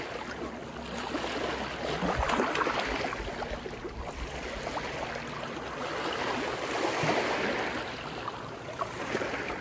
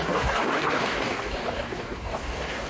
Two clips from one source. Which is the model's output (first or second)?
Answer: second